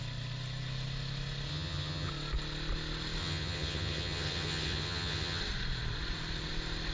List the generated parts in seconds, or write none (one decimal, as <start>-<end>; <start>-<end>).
1.5-2.1; 3.2-5.4